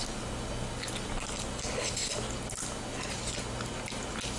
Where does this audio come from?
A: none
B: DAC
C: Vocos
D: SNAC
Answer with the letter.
A